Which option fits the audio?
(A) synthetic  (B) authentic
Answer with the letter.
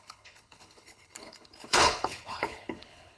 A